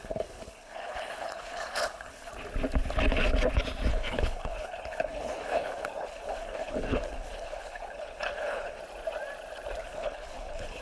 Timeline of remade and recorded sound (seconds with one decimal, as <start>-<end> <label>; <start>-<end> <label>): 0.0-2.3 remade; 2.3-3.9 recorded; 3.9-8.8 remade; 8.8-9.8 recorded; 9.8-10.8 remade